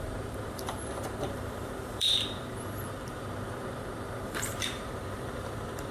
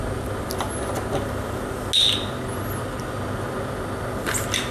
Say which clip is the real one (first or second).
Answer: second